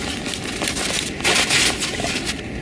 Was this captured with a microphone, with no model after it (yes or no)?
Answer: yes